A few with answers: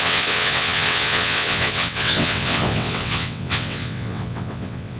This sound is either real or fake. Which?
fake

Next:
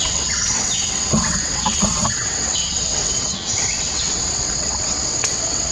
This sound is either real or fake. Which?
fake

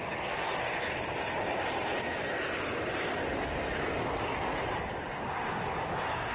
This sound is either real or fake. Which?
real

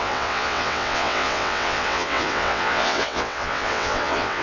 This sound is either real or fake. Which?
fake